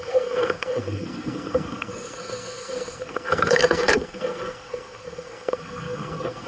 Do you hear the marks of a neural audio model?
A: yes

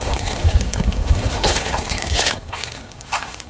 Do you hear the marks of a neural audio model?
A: yes